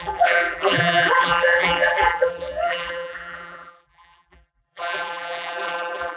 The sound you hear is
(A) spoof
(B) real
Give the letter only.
A